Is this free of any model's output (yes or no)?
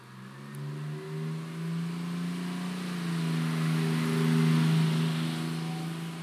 yes